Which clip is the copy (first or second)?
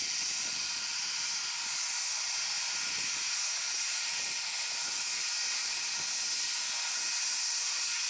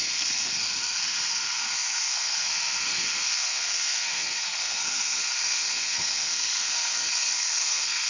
second